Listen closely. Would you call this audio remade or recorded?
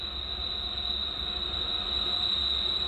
recorded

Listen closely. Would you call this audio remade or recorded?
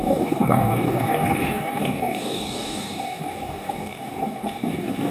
remade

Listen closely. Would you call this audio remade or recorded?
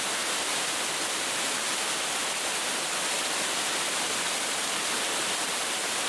recorded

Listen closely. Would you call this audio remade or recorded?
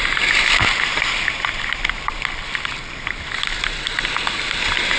recorded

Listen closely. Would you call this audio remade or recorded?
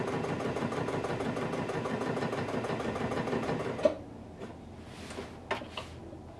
recorded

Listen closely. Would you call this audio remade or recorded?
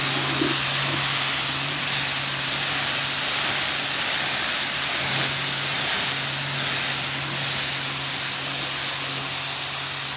recorded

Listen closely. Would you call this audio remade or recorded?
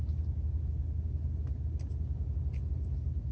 recorded